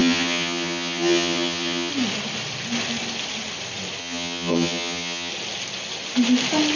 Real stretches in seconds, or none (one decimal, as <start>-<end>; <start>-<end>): 1.9-4.0; 5.3-6.8